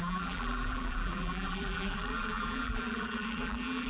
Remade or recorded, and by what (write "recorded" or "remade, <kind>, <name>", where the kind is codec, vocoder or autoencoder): remade, vocoder, BigVGAN v2